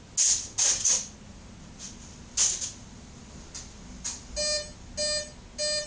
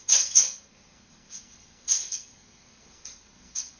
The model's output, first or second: second